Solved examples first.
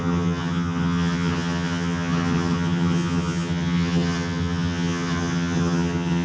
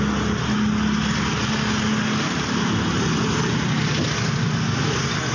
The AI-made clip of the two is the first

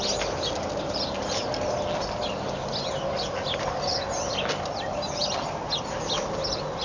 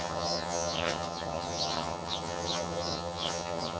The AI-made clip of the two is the second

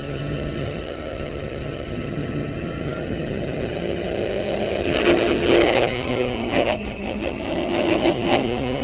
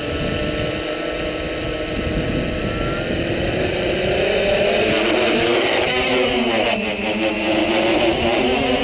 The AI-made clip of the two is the first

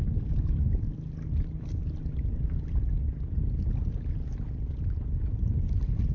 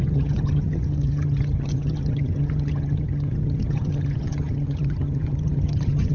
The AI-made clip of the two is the second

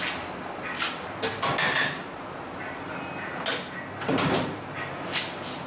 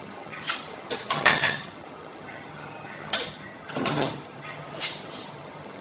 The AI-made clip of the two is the second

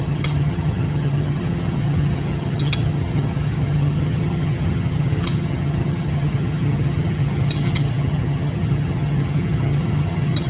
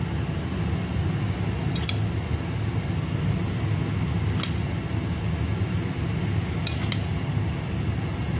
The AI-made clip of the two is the first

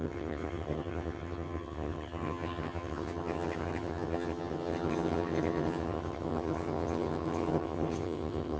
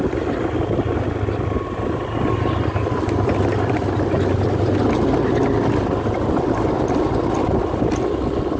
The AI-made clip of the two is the first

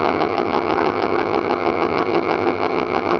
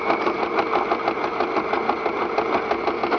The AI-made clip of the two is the first